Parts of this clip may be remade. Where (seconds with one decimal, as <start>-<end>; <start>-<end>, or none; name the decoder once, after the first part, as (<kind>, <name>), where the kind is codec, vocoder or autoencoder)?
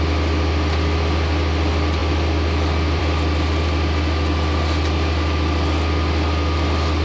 none